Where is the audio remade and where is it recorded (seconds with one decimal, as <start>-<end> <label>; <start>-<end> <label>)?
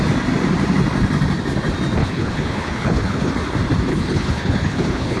0.0-2.0 recorded; 2.0-3.3 remade; 3.3-3.9 recorded; 3.9-5.2 remade